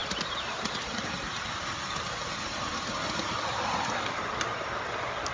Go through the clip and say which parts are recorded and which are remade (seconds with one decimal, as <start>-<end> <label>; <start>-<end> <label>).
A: 0.0-1.2 remade; 1.2-5.3 recorded